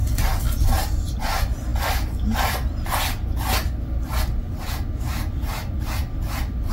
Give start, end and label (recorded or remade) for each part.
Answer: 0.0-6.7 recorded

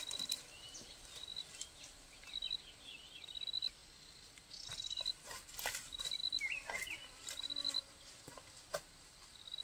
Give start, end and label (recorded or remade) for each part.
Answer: 0.0-9.6 recorded

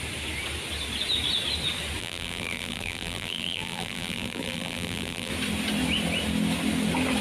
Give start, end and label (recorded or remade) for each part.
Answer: 0.0-2.0 recorded; 2.0-5.3 remade; 5.3-7.2 recorded

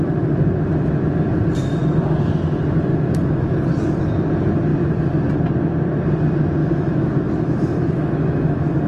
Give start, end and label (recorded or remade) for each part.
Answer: 0.0-2.9 recorded; 2.9-3.5 remade; 3.5-6.6 recorded; 6.6-8.9 remade

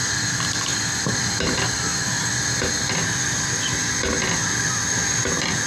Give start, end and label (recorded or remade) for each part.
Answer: 0.0-5.7 recorded